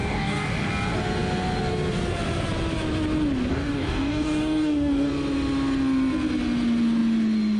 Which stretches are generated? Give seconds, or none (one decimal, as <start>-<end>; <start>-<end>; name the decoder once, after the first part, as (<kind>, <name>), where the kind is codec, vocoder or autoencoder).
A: 0.0-0.7 (codec, DAC); 3.5-5.1